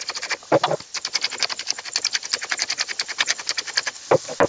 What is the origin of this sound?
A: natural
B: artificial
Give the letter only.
A